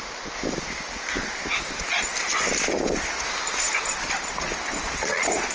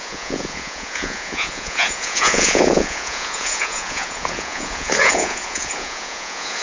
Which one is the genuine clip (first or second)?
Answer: first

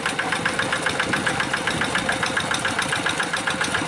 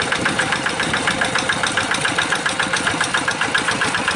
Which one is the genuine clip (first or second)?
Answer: first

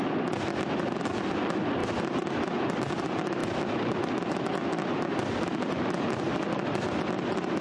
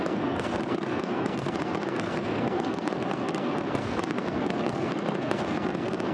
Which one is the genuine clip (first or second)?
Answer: first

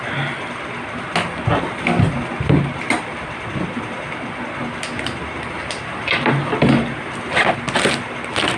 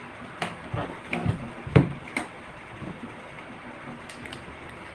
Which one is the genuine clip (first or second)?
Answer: first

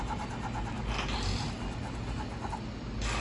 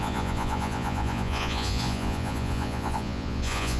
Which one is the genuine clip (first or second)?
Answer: first